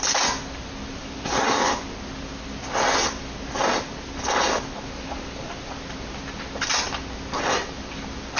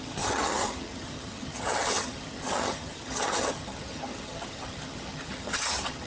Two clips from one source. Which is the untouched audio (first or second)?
first